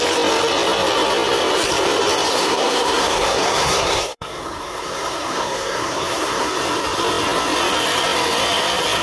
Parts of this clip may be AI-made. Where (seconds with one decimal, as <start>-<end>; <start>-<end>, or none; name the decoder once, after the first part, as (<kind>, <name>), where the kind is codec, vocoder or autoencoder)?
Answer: 2.3-6.5 (codec, SNAC)